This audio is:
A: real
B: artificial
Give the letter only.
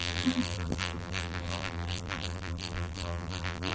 B